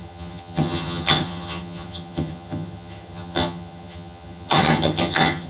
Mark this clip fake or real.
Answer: fake